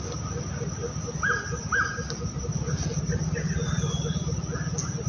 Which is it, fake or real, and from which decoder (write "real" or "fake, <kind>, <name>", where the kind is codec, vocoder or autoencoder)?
real